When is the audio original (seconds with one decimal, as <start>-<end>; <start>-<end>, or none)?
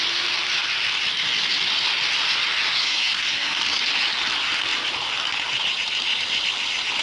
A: 0.0-2.7; 3.6-7.0